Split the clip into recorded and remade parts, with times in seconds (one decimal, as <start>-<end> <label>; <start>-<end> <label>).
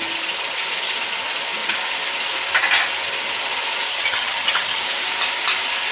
0.0-3.9 recorded; 3.9-4.8 remade; 4.8-5.9 recorded